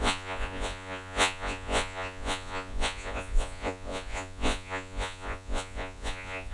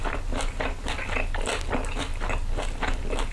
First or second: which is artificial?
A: first